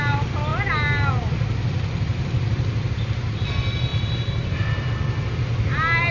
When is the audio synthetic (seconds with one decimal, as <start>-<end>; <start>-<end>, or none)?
3.9-4.9